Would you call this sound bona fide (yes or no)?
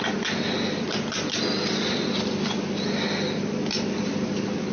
yes